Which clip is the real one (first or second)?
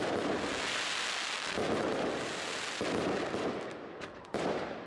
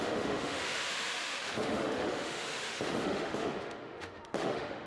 first